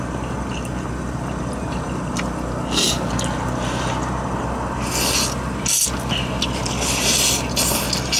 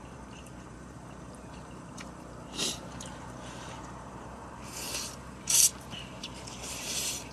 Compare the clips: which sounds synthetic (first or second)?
second